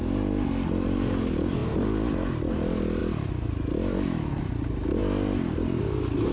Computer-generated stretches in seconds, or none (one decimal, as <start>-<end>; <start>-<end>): none